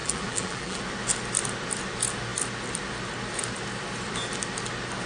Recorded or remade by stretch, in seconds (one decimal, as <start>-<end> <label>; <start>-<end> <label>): 0.0-0.8 remade; 0.8-5.1 recorded

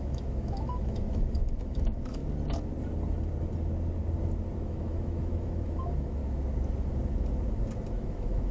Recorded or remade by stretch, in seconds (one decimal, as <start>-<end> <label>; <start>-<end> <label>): 0.0-2.2 remade; 2.2-4.6 recorded; 4.6-6.2 remade; 6.2-7.9 recorded; 7.9-8.5 remade